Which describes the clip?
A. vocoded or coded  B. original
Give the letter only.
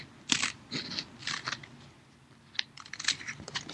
B